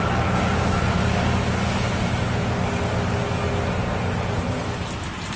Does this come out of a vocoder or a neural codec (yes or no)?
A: no